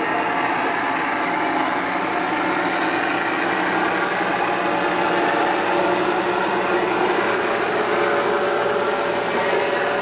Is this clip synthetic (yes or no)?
no